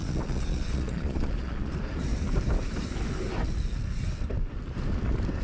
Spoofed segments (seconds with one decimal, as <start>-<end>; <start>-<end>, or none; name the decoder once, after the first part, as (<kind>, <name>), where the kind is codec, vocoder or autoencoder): 0.0-1.7 (vocoder, Vocos)